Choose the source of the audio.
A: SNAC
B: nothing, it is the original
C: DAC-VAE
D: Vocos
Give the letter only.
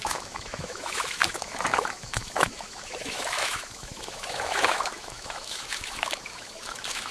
C